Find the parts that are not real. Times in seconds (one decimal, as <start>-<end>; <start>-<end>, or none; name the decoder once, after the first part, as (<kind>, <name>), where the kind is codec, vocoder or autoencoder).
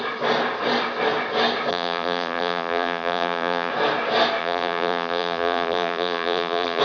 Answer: 1.7-3.7 (vocoder, BigVGAN v2); 4.4-6.8